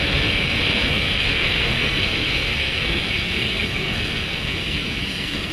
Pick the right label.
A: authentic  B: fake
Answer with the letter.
B